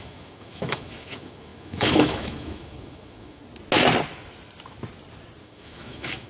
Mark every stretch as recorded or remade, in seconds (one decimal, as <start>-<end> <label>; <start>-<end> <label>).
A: 0.0-3.4 remade; 3.4-5.4 recorded; 5.4-6.3 remade